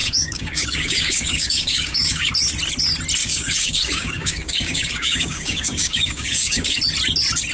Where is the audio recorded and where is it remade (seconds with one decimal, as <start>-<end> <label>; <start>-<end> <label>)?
0.0-2.3 remade; 2.3-3.2 recorded; 3.2-6.8 remade; 6.8-7.5 recorded